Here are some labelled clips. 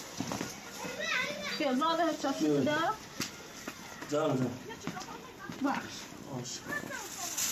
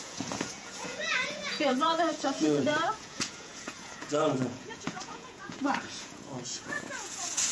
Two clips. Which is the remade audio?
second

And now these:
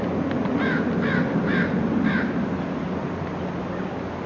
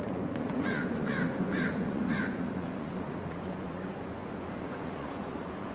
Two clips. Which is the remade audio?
second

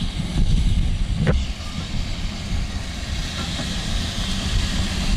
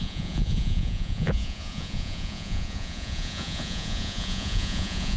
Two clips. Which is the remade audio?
second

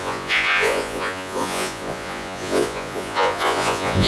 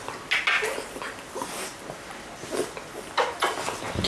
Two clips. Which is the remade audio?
first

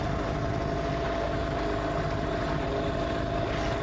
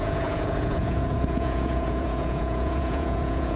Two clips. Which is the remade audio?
second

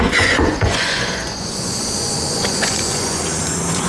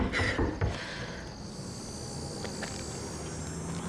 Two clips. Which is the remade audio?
first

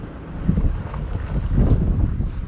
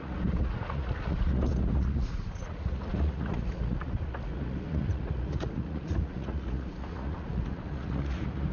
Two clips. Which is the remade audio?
second